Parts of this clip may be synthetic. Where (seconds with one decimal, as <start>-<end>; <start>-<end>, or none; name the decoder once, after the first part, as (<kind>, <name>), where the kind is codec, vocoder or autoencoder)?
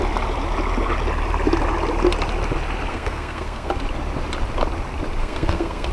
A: 2.9-3.7 (codec, SNAC); 5.2-5.9